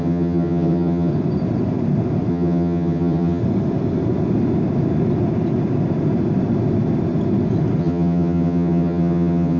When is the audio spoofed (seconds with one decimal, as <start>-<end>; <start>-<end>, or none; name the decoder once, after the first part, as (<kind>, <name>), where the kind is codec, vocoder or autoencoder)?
0.0-1.1 (vocoder, HiFi-GAN); 2.3-3.4; 7.8-9.6